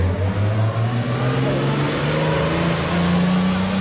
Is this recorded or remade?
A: recorded